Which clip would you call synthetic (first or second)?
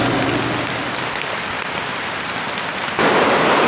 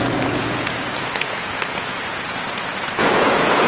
second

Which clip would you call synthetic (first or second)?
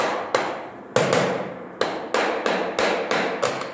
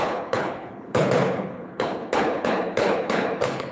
second